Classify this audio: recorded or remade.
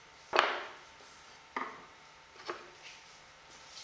recorded